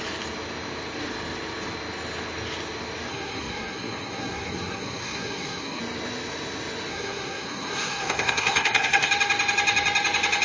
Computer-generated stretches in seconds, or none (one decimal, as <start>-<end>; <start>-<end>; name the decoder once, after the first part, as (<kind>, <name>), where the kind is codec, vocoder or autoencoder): 3.1-5.8 (codec, SNAC); 6.9-9.1